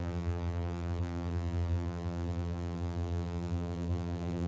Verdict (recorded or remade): remade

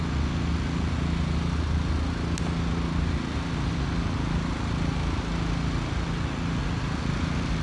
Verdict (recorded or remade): recorded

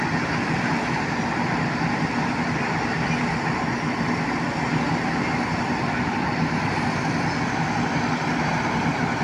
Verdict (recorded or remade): recorded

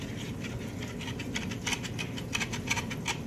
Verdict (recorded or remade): recorded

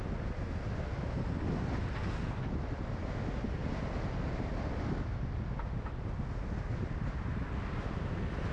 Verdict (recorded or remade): recorded